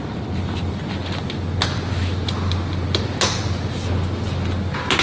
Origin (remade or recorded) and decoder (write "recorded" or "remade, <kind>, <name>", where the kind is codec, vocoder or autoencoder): recorded